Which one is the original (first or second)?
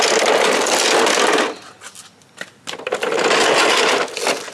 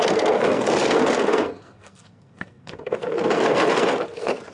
first